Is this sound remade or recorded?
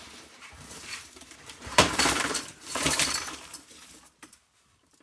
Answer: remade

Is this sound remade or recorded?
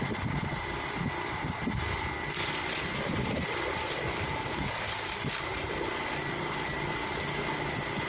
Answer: recorded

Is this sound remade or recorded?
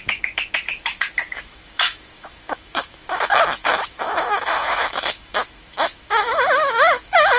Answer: remade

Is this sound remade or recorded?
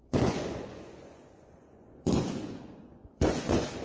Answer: remade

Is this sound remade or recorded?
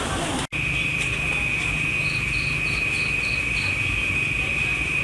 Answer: recorded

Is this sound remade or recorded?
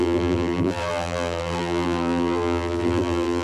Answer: remade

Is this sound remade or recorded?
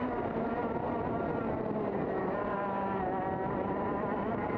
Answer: remade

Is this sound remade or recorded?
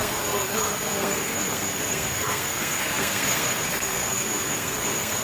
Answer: remade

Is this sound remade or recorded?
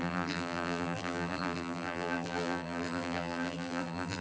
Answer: remade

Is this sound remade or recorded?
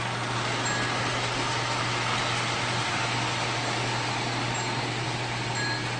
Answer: recorded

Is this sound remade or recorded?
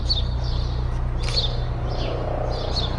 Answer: recorded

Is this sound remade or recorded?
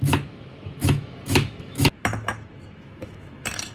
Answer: remade